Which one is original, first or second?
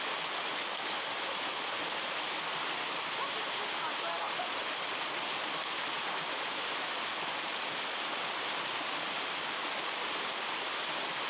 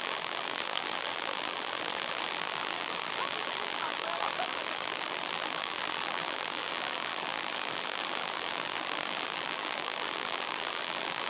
first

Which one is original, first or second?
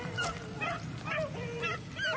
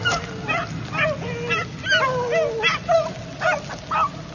second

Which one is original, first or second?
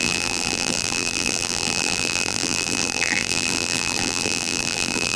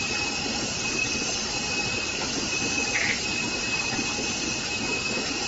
second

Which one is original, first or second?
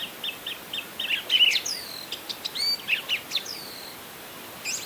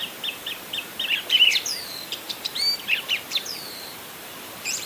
first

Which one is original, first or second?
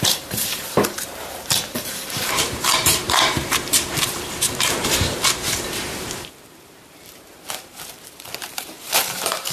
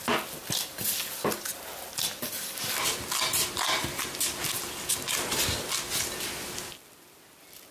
second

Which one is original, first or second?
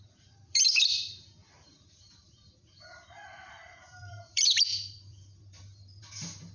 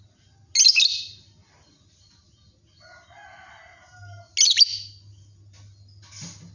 second